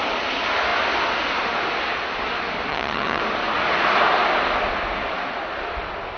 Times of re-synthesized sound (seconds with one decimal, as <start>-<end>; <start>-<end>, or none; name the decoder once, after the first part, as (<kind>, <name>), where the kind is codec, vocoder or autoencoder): 2.7-3.2 (vocoder, HiFi-GAN)